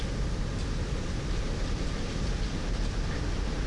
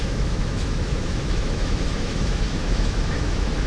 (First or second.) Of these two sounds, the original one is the first